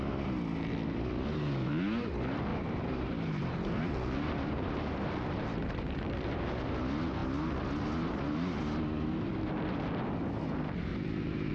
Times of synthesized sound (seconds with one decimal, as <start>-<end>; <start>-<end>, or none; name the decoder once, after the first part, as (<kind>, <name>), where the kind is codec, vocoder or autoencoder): 2.5-6.6 (vocoder, BigVGAN v2); 10.9-11.5